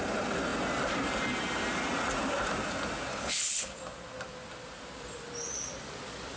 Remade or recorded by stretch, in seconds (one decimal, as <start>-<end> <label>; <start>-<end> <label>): 0.0-3.1 recorded; 3.1-3.8 remade; 3.8-6.4 recorded